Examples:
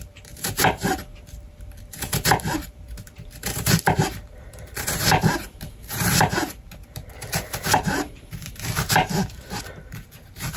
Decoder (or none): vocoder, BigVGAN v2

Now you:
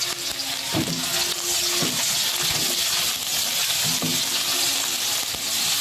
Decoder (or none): none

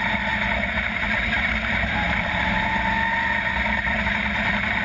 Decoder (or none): none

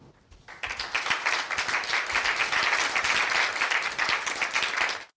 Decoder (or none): none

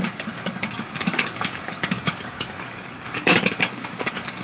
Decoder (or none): codec, DAC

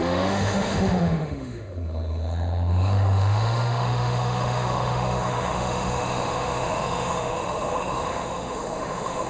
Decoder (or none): autoencoder, DAC-VAE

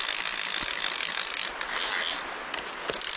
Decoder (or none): none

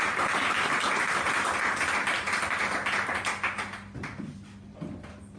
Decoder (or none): none